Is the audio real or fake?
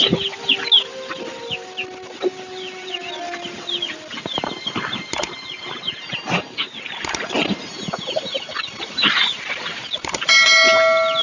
real